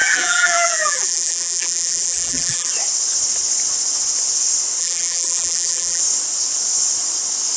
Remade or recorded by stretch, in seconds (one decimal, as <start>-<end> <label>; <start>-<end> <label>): 0.0-2.7 remade; 2.7-4.8 recorded; 4.8-6.0 remade; 6.0-7.6 recorded